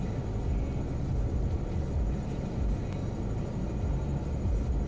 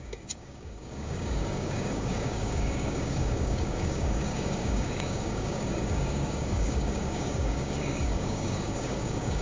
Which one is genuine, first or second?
first